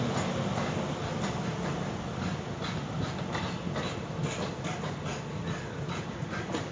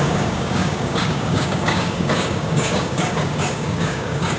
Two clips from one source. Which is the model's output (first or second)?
second